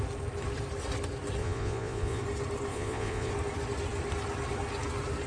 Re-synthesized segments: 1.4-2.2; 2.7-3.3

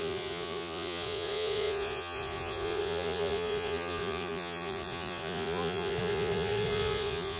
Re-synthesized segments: 0.0-7.4

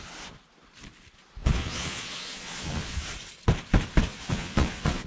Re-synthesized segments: 1.4-3.0; 4.1-5.1

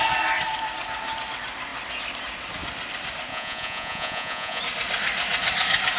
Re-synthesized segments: 3.3-4.6

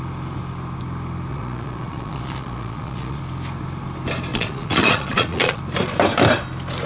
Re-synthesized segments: 1.3-3.2; 4.3-5.6

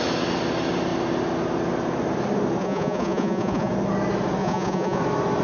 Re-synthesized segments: 2.6-3.7; 4.4-5.0

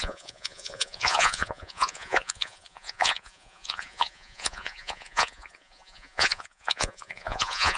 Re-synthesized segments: 0.0-7.8